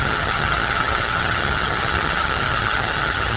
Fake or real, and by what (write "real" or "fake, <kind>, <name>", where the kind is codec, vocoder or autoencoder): fake, vocoder, HiFi-GAN